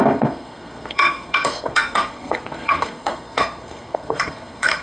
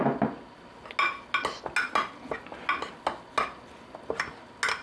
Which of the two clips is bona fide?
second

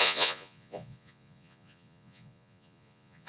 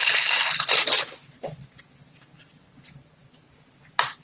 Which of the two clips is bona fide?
second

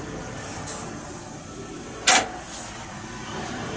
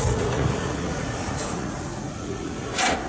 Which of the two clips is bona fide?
first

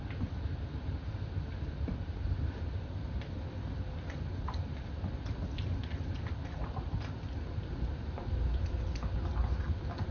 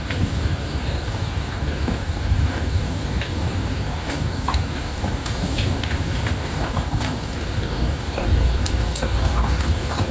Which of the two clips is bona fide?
first